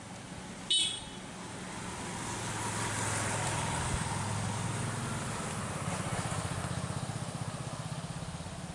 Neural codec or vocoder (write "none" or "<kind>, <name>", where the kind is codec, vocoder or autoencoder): none